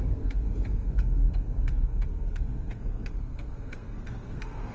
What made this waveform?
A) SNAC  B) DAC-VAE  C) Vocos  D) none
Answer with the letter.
A